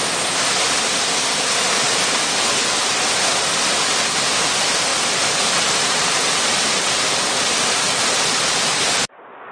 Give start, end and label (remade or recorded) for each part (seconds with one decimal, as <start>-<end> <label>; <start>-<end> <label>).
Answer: 0.0-4.9 recorded; 4.9-7.0 remade; 7.0-9.5 recorded